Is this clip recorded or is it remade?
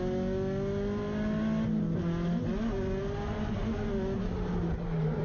recorded